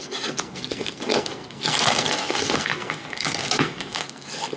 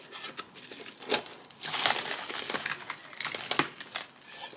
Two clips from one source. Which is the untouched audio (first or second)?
second